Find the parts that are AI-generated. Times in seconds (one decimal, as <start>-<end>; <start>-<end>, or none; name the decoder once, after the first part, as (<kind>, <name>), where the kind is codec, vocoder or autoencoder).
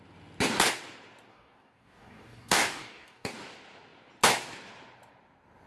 1.3-3.3 (codec, DAC)